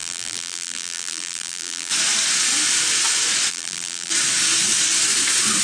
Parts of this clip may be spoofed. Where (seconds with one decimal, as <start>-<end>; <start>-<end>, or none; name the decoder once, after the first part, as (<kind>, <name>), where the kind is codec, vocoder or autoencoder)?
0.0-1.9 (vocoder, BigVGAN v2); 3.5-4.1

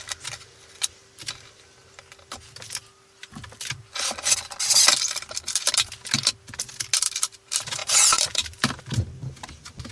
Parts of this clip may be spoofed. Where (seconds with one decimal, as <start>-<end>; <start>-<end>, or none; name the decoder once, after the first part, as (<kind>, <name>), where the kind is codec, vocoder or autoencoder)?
7.8-8.8 (vocoder, BigVGAN v2)

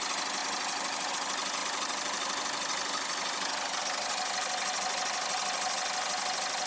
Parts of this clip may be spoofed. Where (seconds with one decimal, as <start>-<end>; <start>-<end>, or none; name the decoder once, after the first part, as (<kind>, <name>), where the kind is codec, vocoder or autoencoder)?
1.6-3.8 (vocoder, BigVGAN v2)

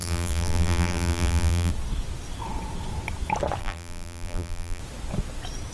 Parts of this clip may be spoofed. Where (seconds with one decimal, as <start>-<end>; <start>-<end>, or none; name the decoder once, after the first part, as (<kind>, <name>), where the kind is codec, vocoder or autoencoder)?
0.0-1.7 (vocoder, BigVGAN v2); 3.6-4.8

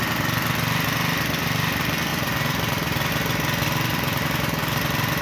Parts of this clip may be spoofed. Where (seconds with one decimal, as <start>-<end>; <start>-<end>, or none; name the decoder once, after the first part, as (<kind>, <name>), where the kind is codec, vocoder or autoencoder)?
2.1-3.1 (vocoder, BigVGAN v2); 3.9-4.8